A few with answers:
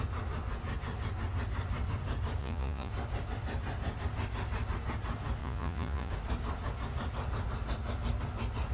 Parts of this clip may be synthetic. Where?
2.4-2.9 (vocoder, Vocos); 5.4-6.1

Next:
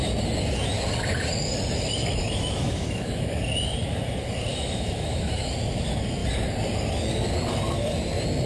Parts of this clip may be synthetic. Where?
2.2-3.4 (autoencoder, DAC-VAE); 4.5-5.5

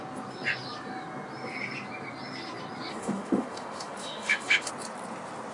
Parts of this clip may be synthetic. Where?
2.9-4.7 (autoencoder, DAC-VAE)

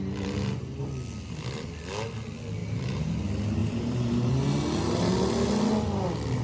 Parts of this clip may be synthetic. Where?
2.6-3.2 (vocoder, BigVGAN v2); 3.6-4.3

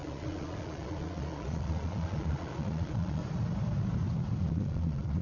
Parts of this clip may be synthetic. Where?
0.0-3.2 (vocoder, Vocos); 4.4-5.2

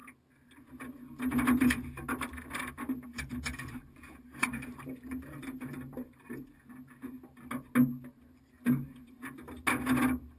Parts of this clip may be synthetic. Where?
3.1-6.6 (vocoder, BigVGAN v2)

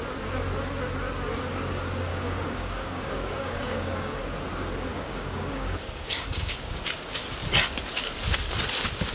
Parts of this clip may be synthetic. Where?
2.1-4.2 (codec, DAC); 4.9-6.8

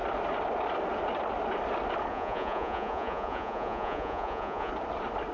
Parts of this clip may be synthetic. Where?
2.1-4.7 (vocoder, Vocos)